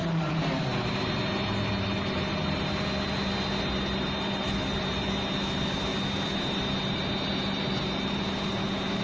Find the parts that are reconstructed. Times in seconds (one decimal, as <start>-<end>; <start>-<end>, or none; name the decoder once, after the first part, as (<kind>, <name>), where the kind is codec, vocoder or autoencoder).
none